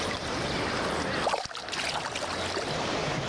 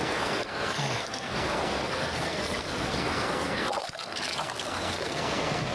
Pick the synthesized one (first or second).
second